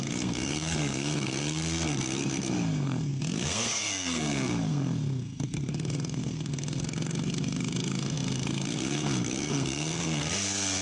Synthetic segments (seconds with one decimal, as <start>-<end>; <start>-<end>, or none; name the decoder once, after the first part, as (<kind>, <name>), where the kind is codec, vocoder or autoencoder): 0.0-10.8 (codec, SNAC)